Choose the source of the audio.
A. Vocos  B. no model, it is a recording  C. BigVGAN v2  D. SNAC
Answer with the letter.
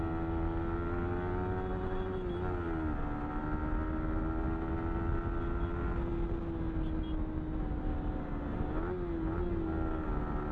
B